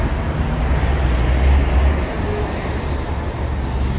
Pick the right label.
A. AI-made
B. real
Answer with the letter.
B